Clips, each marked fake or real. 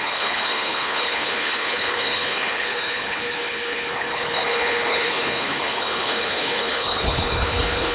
fake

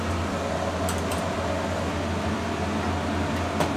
real